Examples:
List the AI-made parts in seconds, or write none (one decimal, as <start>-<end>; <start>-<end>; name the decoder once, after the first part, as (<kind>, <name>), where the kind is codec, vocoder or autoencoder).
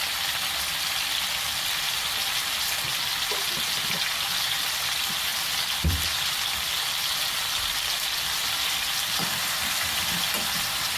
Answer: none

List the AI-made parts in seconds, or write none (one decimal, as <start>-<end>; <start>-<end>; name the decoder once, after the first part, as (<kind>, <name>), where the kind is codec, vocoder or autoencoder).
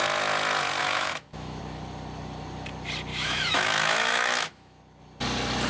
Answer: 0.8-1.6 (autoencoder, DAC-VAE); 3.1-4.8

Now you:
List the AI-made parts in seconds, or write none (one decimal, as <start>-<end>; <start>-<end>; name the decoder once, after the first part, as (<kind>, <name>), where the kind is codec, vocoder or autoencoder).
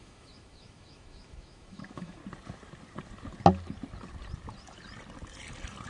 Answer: 0.0-2.2 (autoencoder, DAC-VAE)